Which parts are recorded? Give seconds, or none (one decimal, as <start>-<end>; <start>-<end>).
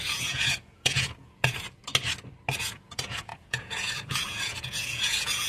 1.8-2.6